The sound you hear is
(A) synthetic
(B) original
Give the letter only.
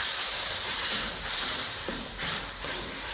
A